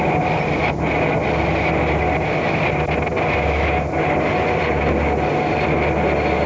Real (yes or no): yes